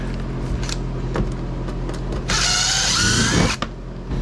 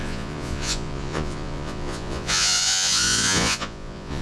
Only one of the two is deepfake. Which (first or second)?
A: second